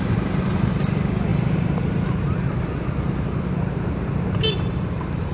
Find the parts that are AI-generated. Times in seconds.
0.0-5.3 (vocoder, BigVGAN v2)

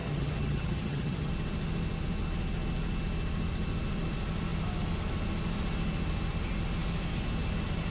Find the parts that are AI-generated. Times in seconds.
0.0-1.3 (vocoder, HiFi-GAN)